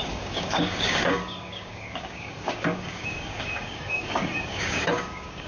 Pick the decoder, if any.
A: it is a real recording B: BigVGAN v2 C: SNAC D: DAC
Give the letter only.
D